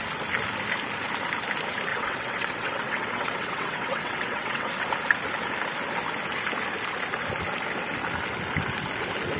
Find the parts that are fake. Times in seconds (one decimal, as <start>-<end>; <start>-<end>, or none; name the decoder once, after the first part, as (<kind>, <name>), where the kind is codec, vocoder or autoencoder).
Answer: 1.9-4.7 (vocoder, WaveNeXt)